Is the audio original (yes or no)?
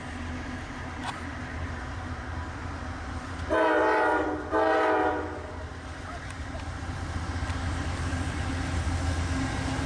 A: yes